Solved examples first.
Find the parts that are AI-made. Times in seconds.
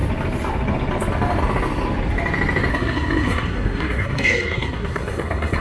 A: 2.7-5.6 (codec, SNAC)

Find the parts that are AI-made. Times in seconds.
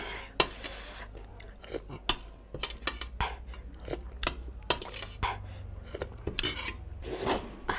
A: none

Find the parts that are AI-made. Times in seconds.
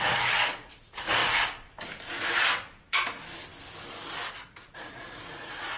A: 0.0-1.2 (vocoder, Vocos); 4.3-5.8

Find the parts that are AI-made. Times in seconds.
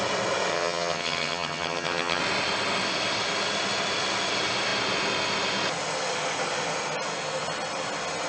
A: 0.5-2.2 (vocoder, HiFi-GAN)